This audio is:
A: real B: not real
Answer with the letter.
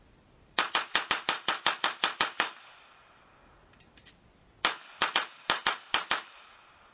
A